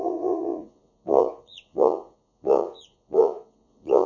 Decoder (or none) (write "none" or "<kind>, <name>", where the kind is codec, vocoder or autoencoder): vocoder, Vocos